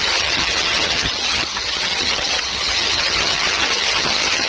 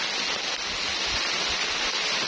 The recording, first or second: second